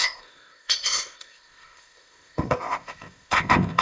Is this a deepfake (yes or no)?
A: yes